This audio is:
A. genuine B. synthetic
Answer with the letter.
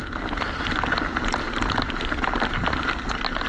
A